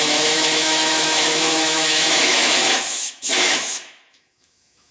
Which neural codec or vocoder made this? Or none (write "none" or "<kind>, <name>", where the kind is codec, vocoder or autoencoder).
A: autoencoder, DAC-VAE